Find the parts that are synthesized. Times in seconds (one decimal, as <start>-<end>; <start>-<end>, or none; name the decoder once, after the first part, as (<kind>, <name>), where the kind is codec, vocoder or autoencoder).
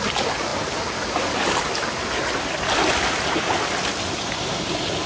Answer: none